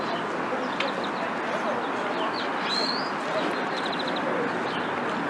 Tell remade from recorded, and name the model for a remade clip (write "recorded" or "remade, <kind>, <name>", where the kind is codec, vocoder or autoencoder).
recorded